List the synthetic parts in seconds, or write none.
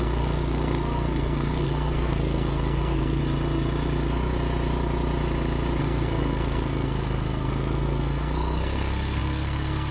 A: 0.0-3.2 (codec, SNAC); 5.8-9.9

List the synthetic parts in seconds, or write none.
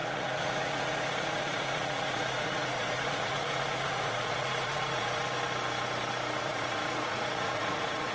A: 0.0-5.2 (vocoder, Vocos); 6.4-8.1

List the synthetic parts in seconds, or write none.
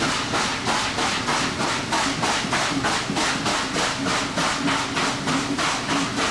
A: none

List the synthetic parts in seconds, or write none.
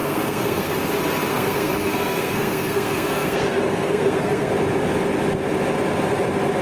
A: 0.0-0.7 (codec, SNAC); 1.3-4.5